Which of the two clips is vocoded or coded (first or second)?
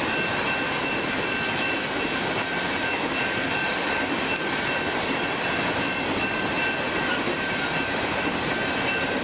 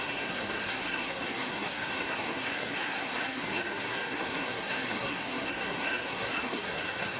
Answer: second